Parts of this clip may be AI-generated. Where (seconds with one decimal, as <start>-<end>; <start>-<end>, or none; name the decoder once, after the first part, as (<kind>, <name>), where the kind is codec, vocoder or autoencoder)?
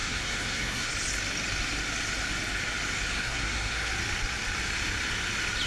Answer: 0.0-0.9 (codec, SNAC); 3.1-3.9